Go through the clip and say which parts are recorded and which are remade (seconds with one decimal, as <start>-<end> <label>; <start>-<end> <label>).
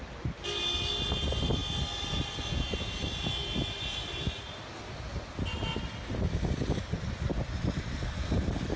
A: 0.0-8.8 recorded